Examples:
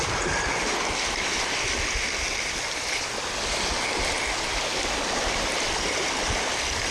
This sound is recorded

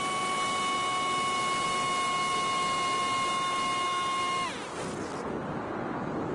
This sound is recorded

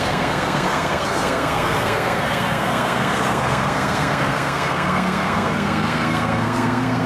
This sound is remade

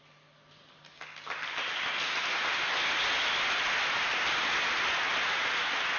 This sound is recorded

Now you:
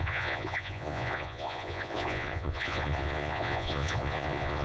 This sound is remade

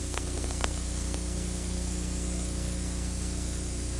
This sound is remade